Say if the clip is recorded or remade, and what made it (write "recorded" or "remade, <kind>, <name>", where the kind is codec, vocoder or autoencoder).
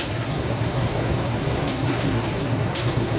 remade, codec, SNAC